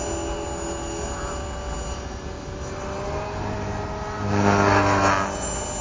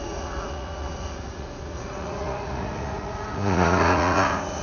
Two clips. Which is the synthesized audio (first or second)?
second